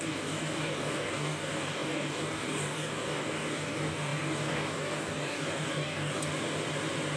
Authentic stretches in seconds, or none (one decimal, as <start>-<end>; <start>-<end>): 6.3-7.2